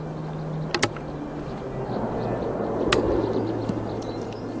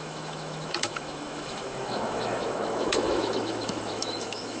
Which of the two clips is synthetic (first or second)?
second